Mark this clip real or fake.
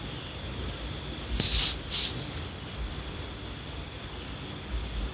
real